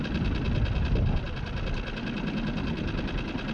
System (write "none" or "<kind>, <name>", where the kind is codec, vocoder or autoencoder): none